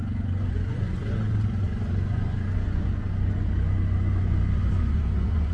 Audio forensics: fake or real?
fake